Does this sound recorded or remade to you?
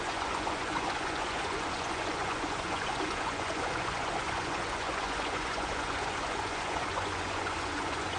remade